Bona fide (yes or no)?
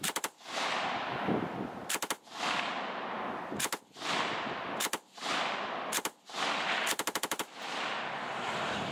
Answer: yes